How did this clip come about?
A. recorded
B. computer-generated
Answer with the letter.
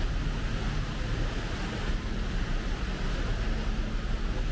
A